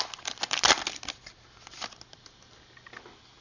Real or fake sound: real